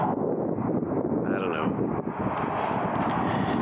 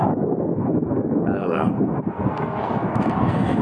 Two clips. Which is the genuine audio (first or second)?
first